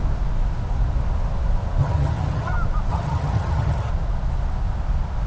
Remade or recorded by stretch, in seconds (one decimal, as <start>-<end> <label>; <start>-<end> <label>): 0.0-1.8 recorded; 1.8-2.5 remade; 2.5-2.9 recorded; 2.9-3.9 remade; 3.9-5.3 recorded